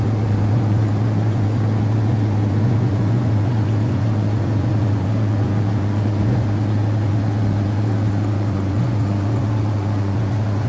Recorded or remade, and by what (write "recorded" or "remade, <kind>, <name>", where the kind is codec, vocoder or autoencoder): remade, vocoder, Vocos